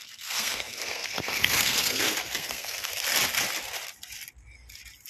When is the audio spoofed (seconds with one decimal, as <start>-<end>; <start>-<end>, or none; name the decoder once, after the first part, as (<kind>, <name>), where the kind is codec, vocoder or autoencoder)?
0.0-2.9 (codec, SNAC)